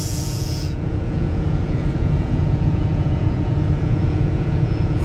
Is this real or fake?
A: fake